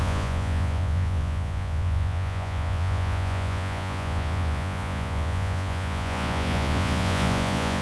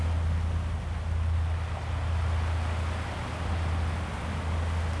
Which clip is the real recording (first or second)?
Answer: second